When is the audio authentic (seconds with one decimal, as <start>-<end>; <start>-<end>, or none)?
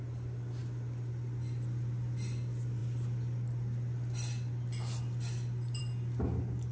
0.0-6.7